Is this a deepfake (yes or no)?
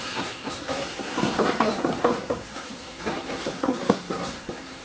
yes